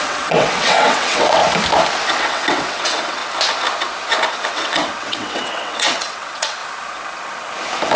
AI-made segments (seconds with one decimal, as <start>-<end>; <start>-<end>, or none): 0.0-1.4; 2.2-3.2; 4.3-6.6